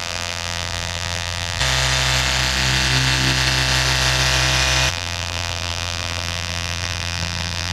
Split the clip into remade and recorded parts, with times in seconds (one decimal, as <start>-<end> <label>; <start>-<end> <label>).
0.0-1.6 remade; 1.6-4.9 recorded; 4.9-7.7 remade